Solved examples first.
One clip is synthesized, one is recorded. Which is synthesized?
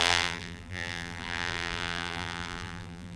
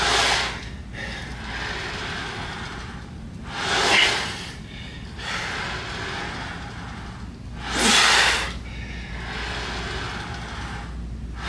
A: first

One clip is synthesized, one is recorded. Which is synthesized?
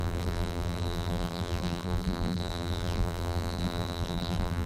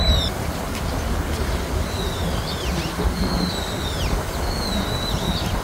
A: first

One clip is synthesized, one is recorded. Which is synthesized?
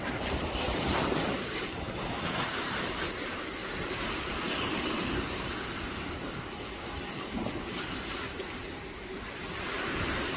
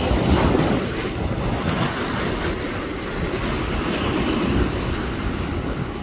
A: first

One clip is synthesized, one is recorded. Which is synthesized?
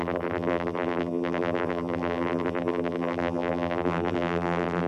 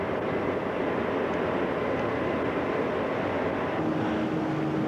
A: first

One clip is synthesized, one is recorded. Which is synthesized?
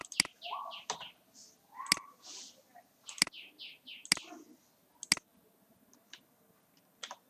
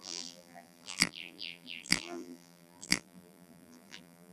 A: second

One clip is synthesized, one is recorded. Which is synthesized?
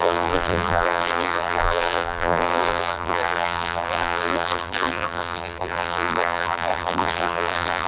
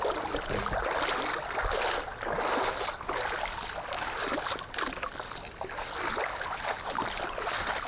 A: first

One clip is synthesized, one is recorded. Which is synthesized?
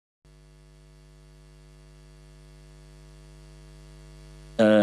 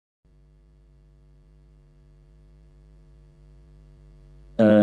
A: second